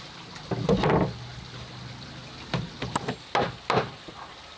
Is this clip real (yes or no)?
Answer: yes